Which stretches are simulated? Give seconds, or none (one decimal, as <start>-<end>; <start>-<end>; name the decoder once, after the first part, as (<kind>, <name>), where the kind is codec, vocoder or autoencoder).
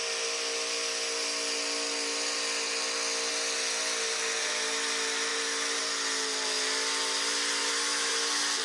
7.6-8.1 (autoencoder, DAC-VAE)